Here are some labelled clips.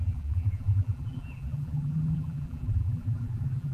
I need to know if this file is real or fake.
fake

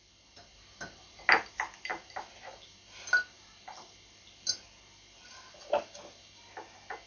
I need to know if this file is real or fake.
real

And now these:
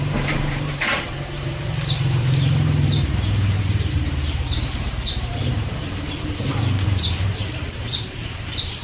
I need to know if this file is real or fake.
fake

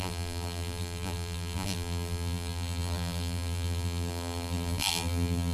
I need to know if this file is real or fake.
fake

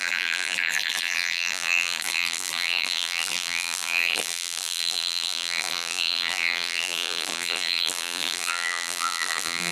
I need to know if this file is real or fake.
fake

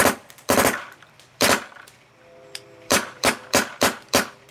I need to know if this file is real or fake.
fake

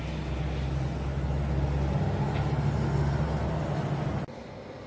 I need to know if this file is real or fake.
real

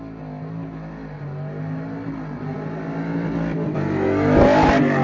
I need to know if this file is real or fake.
real